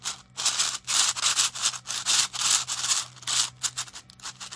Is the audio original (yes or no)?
yes